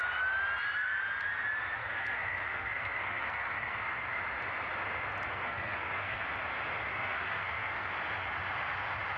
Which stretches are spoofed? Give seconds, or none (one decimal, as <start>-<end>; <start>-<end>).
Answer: 1.8-4.2; 5.3-6.2; 6.9-7.9